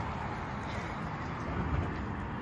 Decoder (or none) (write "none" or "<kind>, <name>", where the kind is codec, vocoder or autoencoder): none